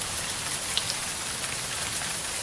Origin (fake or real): real